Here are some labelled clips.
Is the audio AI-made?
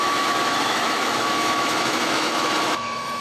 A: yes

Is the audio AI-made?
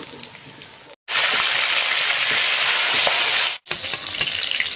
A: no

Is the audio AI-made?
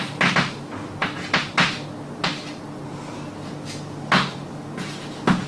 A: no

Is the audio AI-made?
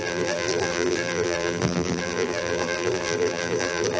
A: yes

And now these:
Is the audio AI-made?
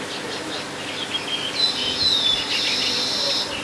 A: no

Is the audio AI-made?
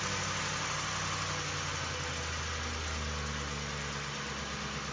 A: no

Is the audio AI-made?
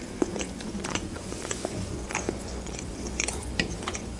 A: yes